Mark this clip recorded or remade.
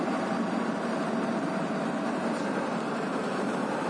recorded